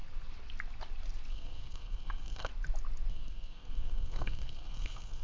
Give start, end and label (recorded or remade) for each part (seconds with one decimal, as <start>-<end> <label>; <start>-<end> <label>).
0.0-1.3 recorded; 1.3-2.5 remade; 2.5-3.1 recorded; 3.1-5.2 remade